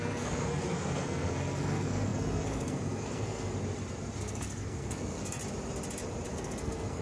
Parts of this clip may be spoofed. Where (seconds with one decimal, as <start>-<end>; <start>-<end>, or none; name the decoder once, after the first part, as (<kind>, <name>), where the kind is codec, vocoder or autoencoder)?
0.0-3.5 (codec, SNAC); 4.2-5.4; 6.3-7.0